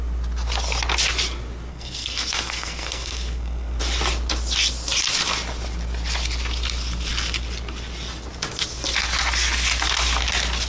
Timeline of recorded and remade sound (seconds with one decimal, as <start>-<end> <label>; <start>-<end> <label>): 0.0-1.7 recorded; 1.7-3.8 remade; 3.8-10.7 recorded